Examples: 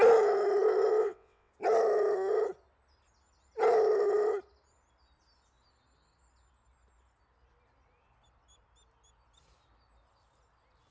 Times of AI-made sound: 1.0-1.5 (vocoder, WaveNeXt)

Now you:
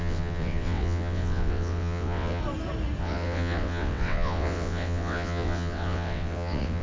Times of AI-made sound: 0.0-2.4 (vocoder, WaveNeXt); 3.0-6.8

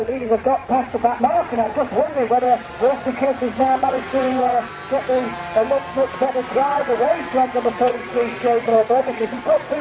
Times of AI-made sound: 0.0-4.7 (vocoder, WaveNeXt); 6.5-9.8

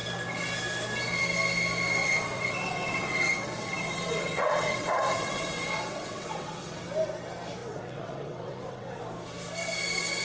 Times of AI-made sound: 2.0-6.8 (vocoder, WaveNeXt); 7.6-9.0

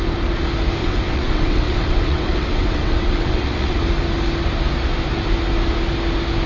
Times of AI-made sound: 0.8-3.8 (vocoder, WaveNeXt)